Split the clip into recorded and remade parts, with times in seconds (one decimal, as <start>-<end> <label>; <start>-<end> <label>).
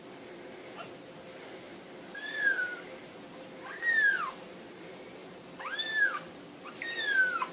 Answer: 0.0-7.5 recorded